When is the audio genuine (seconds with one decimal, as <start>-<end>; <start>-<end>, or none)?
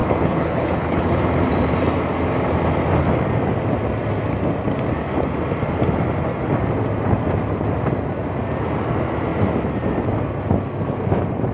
1.2-11.5